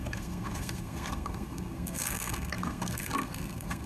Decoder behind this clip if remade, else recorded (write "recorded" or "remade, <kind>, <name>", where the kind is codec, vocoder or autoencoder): remade, codec, SNAC